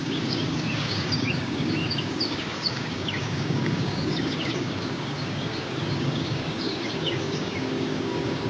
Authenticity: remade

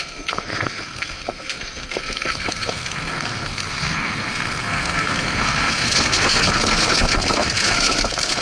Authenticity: remade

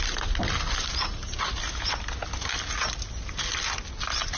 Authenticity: recorded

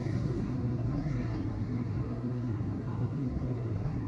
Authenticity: remade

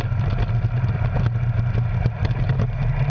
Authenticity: recorded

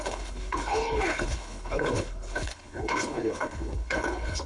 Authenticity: remade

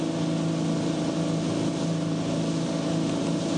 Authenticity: recorded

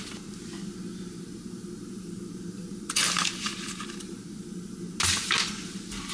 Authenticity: remade